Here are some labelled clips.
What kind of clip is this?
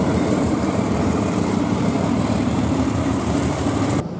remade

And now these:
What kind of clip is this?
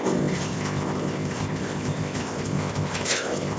remade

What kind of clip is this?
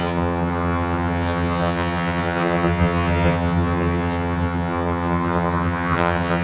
remade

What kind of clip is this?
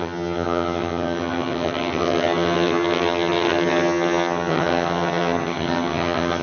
remade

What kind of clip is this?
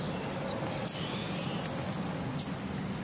recorded